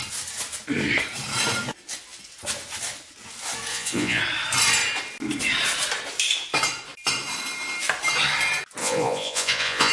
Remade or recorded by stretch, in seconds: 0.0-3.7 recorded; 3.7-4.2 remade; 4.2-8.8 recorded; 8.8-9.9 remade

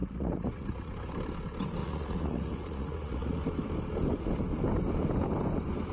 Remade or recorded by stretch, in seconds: 0.0-0.9 remade; 0.9-1.8 recorded; 1.8-3.4 remade; 3.4-5.9 recorded

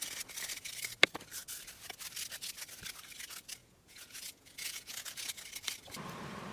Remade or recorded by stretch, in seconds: 0.0-3.6 recorded; 3.6-5.4 remade; 5.4-6.5 recorded

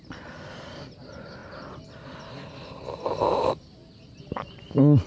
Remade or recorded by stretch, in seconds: 0.0-5.1 recorded

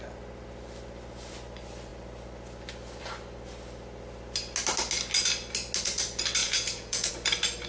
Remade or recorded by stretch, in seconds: 0.0-6.4 recorded; 6.4-7.1 remade; 7.1-7.7 recorded